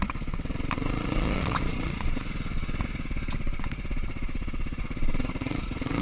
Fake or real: fake